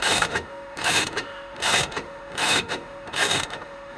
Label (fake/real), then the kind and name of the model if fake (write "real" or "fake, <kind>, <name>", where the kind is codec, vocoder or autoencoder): fake, autoencoder, DAC-VAE